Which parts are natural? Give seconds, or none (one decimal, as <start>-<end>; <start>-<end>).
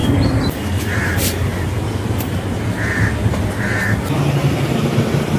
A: 0.8-5.4